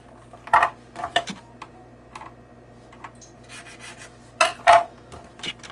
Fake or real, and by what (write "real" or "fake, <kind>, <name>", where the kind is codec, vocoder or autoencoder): real